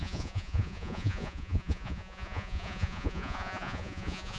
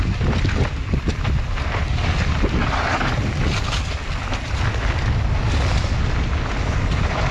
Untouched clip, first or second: second